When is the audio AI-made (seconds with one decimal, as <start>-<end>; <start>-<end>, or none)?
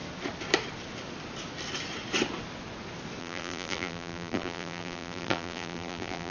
3.2-6.3